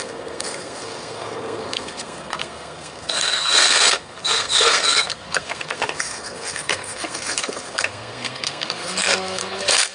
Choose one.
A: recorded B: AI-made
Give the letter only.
B